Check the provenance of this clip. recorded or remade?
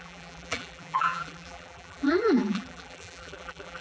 remade